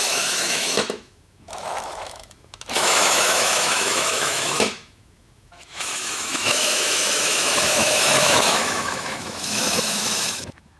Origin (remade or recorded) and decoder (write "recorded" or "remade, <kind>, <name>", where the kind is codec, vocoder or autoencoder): remade, autoencoder, DAC-VAE